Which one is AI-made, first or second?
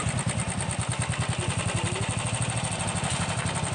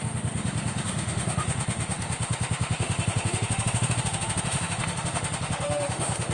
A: second